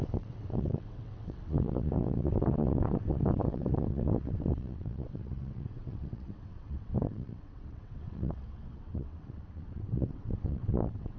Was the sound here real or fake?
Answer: fake